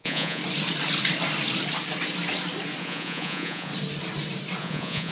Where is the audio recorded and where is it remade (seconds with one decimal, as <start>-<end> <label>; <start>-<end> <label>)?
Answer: 0.0-0.4 remade; 0.4-2.8 recorded; 2.8-3.7 remade; 3.7-4.6 recorded; 4.6-5.1 remade